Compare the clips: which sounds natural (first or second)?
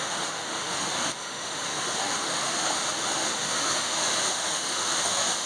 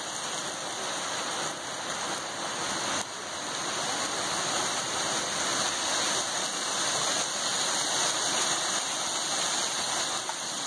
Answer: second